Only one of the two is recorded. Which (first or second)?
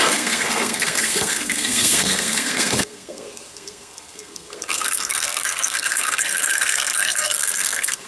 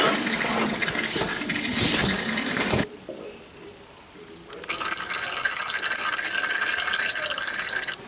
second